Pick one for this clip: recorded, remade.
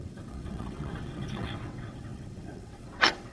remade